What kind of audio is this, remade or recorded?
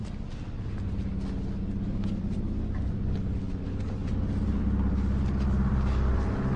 remade